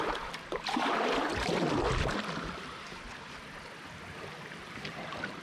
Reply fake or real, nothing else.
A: real